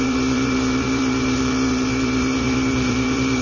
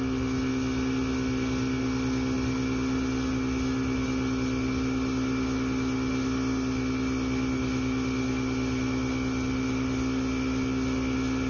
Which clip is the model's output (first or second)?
first